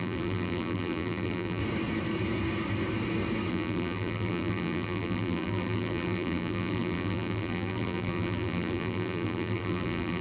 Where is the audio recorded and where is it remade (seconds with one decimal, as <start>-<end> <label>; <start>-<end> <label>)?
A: 0.0-1.6 remade; 1.6-3.5 recorded; 3.5-10.2 remade